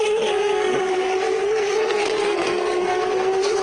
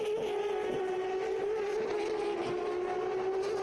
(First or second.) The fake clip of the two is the first